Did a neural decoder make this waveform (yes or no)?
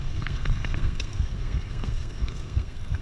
yes